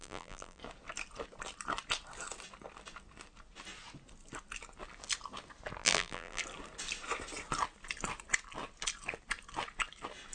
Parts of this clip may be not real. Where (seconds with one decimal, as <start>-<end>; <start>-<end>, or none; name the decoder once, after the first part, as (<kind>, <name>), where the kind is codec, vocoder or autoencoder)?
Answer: 0.0-0.6 (vocoder, BigVGAN v2); 5.8-6.4